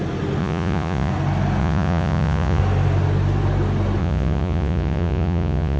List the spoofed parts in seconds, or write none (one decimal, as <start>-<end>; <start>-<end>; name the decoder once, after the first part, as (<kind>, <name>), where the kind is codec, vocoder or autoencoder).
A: 0.4-1.1 (vocoder, Vocos); 1.6-2.6; 4.0-5.8